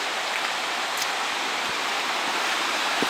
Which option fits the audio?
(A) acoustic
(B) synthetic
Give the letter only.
B